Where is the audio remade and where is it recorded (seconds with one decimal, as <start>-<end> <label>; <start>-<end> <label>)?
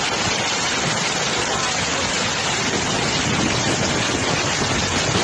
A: 0.0-5.2 recorded